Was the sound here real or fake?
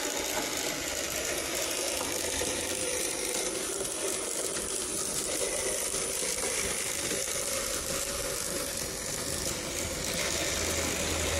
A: real